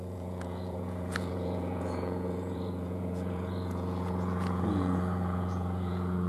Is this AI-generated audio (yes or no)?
yes